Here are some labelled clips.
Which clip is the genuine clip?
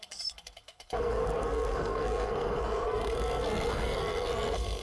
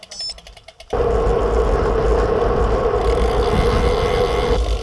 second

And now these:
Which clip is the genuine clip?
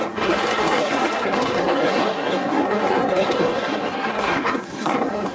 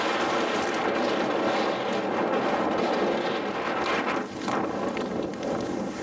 second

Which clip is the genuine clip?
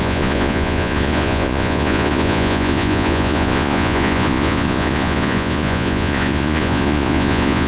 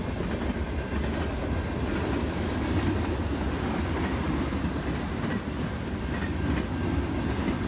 second